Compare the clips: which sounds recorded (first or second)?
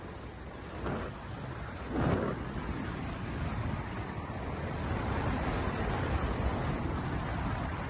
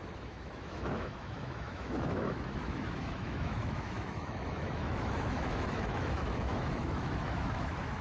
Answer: first